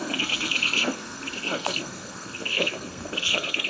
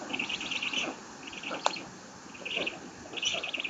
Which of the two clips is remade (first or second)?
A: first